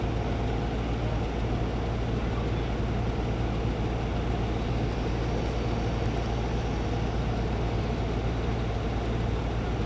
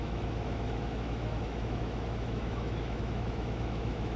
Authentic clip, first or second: first